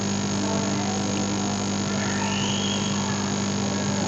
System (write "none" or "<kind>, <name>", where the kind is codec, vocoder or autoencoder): none